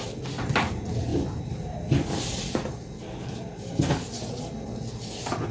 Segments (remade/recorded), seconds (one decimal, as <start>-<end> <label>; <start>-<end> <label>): 0.0-5.5 recorded